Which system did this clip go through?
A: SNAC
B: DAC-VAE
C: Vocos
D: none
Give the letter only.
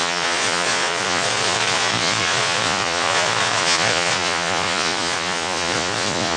C